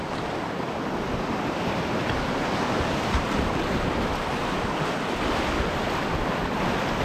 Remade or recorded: recorded